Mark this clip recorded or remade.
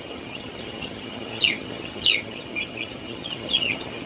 remade